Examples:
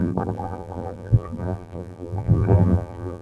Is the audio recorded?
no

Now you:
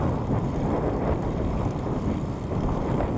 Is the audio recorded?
yes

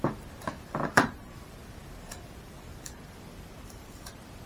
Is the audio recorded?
no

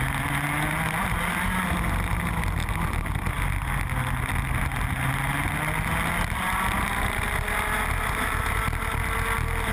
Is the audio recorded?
yes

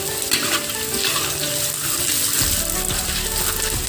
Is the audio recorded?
yes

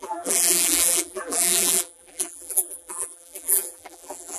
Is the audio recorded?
no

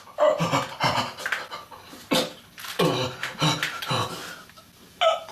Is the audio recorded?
yes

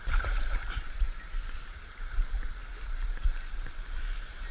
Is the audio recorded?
no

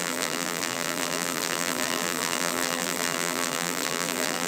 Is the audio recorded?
no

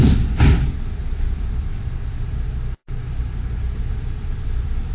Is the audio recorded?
no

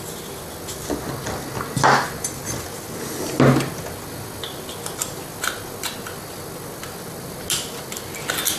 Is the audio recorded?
yes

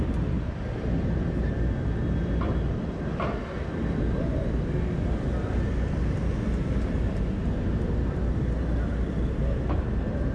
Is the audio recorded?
yes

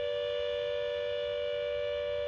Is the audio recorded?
yes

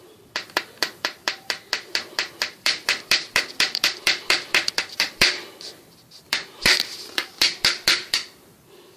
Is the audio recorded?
no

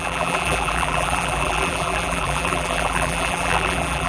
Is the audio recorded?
no